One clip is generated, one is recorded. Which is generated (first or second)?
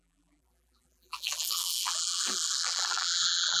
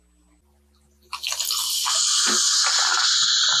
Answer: first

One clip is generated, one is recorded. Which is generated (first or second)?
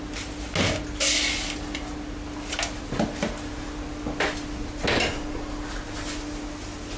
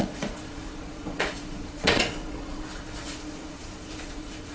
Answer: second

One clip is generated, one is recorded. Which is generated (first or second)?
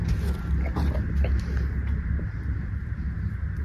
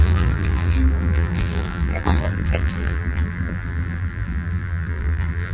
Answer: second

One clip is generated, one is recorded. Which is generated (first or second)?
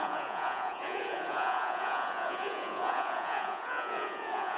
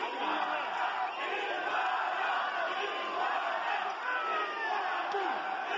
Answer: first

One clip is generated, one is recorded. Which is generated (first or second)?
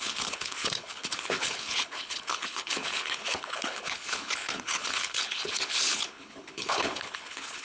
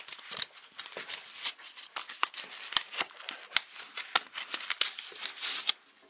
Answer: first